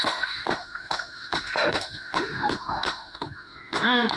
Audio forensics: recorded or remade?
remade